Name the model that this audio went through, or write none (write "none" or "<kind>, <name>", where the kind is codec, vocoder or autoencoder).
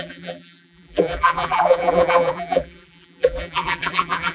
vocoder, BigVGAN v2